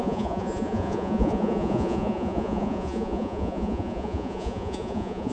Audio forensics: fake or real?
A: fake